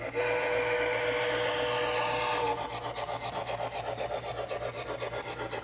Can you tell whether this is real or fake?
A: real